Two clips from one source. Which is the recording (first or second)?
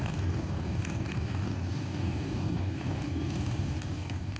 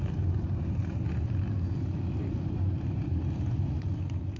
second